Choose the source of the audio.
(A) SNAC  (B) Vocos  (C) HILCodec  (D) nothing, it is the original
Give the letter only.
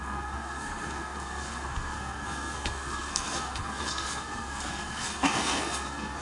A